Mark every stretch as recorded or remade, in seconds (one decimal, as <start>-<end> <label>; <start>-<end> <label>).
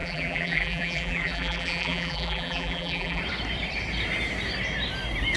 0.0-3.2 remade; 3.2-5.4 recorded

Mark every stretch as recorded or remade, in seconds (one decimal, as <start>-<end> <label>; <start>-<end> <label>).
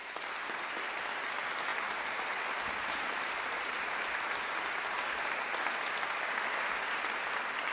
0.0-0.7 remade; 0.7-1.7 recorded; 1.7-5.0 remade; 5.0-7.7 recorded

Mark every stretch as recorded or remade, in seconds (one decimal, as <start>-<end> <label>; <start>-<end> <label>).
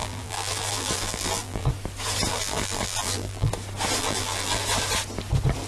0.0-1.7 remade; 1.7-2.3 recorded; 2.3-3.5 remade; 3.5-4.0 recorded; 4.0-4.6 remade; 4.6-5.7 recorded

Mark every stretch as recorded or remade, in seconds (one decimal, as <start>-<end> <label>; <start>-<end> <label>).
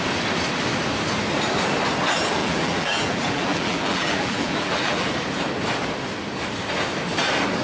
0.0-2.4 recorded; 2.4-5.1 remade; 5.1-7.6 recorded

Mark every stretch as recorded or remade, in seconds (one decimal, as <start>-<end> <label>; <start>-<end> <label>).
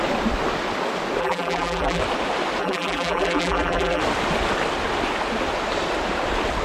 0.0-1.2 recorded; 1.2-2.0 remade; 2.0-2.6 recorded; 2.6-4.0 remade; 4.0-6.6 recorded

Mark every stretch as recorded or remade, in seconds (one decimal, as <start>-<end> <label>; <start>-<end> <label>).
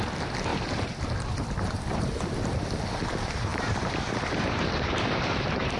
0.0-5.8 remade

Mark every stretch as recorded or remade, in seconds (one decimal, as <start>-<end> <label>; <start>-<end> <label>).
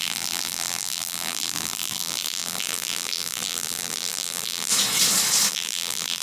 0.0-4.7 remade; 4.7-5.5 recorded; 5.5-6.2 remade